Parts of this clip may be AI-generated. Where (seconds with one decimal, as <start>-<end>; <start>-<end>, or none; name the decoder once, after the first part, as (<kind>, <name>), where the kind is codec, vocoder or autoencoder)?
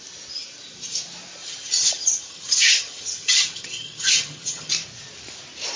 1.4-4.7 (vocoder, HiFi-GAN)